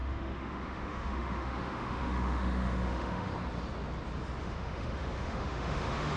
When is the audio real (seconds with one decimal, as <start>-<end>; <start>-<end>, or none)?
3.3-4.4